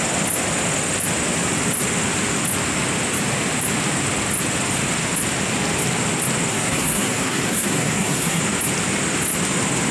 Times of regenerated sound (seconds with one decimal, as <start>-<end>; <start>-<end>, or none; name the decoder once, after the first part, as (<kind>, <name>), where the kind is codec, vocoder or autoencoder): 6.5-8.4 (codec, SNAC)